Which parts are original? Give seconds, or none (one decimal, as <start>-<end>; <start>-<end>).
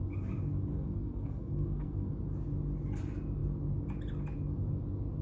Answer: 0.0-0.7; 2.1-5.2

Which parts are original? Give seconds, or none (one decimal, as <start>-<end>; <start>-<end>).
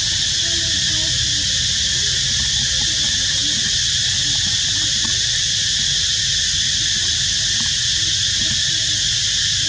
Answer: 0.0-9.7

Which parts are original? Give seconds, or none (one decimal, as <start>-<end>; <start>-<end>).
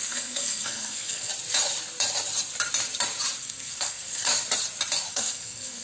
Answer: 1.3-3.4; 4.3-5.1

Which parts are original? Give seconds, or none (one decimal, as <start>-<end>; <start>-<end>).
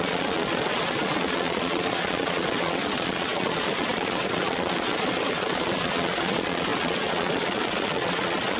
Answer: none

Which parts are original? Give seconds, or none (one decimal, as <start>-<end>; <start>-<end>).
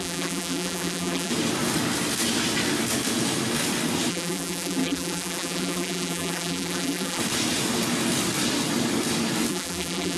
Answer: 1.3-4.1; 7.2-9.5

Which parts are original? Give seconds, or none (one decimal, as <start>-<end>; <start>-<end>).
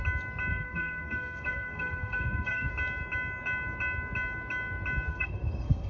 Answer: 0.0-0.5; 2.7-5.1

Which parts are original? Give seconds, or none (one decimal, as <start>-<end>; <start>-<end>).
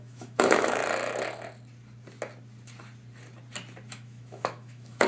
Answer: 0.8-3.9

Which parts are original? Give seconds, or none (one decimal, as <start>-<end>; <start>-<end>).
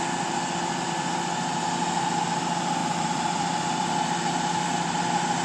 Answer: 0.0-2.8; 3.9-5.4